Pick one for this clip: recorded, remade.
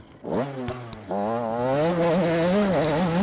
recorded